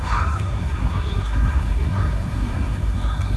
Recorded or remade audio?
remade